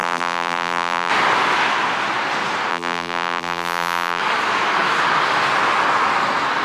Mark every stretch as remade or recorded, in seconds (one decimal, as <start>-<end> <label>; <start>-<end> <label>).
0.0-1.1 remade; 1.1-2.7 recorded; 2.7-4.2 remade; 4.2-6.6 recorded